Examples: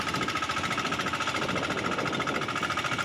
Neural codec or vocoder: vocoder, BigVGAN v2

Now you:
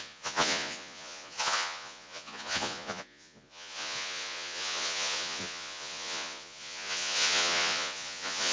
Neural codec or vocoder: vocoder, Vocos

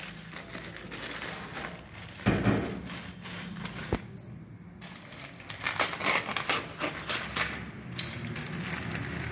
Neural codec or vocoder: none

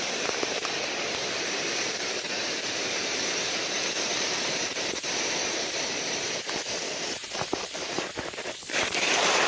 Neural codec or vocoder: vocoder, BigVGAN v2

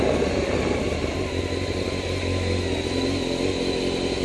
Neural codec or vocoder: none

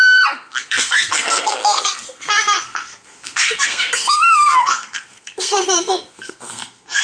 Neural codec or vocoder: codec, SNAC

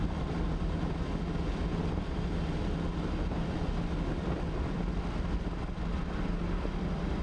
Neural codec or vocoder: none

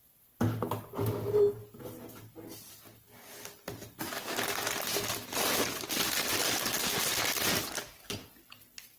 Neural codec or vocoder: none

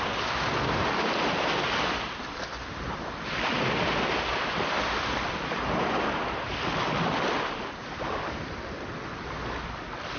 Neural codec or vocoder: none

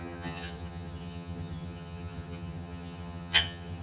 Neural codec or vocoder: vocoder, HiFi-GAN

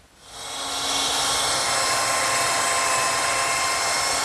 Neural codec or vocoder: none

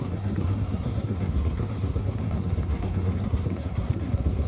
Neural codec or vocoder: codec, SNAC